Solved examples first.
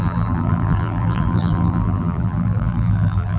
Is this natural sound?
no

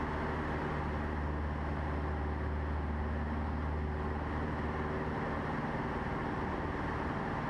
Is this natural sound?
yes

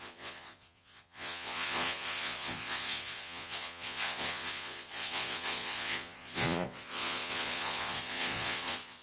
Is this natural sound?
no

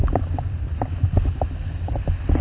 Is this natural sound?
yes